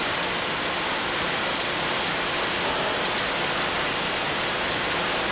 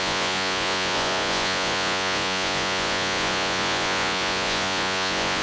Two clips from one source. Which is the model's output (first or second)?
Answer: second